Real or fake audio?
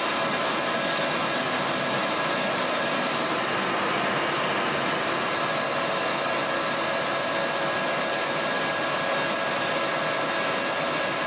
real